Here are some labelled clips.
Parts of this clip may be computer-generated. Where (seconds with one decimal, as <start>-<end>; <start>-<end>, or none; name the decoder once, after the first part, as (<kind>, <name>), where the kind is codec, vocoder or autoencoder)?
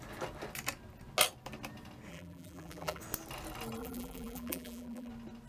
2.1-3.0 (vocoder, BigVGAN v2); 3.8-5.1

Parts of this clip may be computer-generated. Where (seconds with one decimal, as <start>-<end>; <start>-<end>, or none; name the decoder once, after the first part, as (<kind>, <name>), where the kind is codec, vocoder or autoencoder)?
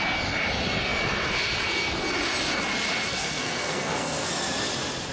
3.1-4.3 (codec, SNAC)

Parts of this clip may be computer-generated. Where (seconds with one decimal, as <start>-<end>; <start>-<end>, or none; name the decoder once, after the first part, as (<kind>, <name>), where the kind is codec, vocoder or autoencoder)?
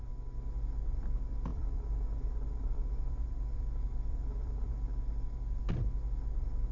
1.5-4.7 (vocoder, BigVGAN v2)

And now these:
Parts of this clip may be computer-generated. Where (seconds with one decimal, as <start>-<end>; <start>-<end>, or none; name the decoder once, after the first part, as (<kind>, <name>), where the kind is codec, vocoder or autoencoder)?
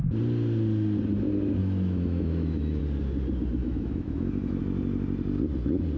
1.6-2.8 (autoencoder, DAC-VAE); 3.6-4.6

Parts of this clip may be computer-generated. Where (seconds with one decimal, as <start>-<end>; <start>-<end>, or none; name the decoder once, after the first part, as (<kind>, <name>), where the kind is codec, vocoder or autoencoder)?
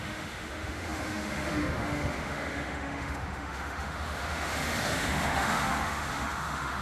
0.0-6.8 (autoencoder, DAC-VAE)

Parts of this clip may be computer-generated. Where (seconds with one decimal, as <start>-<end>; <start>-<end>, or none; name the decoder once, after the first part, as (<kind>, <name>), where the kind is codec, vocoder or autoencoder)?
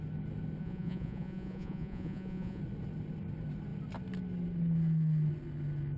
0.6-2.6 (vocoder, Vocos)